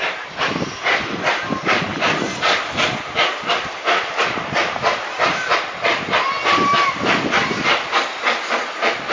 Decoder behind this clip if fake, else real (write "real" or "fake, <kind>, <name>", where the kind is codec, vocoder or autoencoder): fake, vocoder, BigVGAN v2